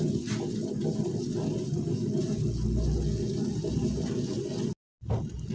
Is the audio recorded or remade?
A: recorded